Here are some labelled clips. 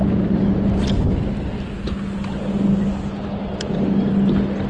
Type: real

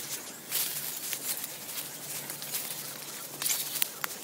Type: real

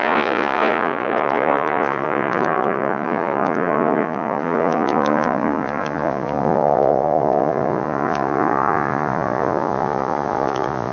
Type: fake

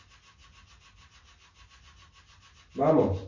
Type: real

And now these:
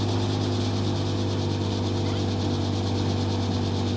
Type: real